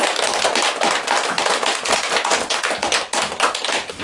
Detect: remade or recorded recorded